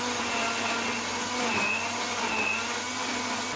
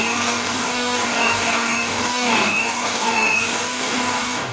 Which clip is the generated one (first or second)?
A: second